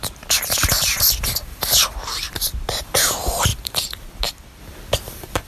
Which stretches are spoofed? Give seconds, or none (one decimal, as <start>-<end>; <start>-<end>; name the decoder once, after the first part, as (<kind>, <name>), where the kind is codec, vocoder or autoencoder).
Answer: 0.0-5.5 (vocoder, BigVGAN v2)